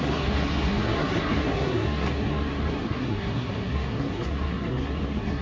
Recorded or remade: remade